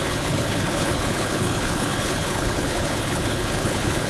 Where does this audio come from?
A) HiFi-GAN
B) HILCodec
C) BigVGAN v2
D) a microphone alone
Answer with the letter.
B